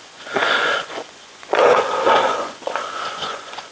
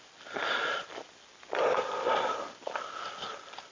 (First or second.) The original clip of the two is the second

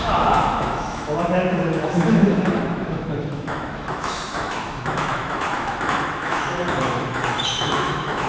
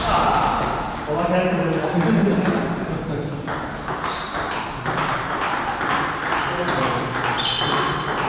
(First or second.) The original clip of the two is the second